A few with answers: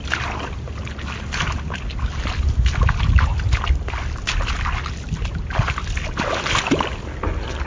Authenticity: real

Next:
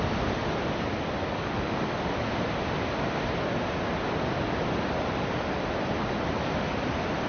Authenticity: real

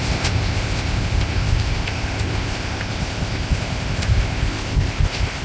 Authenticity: fake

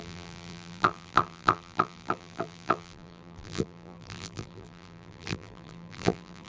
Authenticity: fake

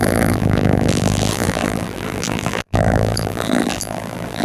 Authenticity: fake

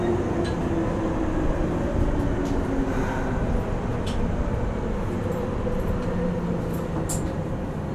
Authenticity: real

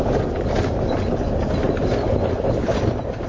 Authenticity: real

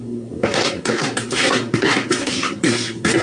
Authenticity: fake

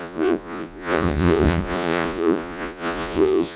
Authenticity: fake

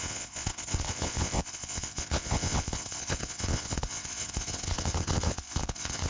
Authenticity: fake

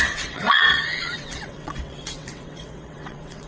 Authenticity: fake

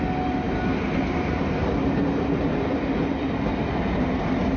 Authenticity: real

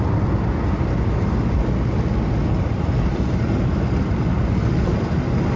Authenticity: real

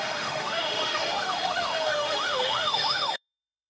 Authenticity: fake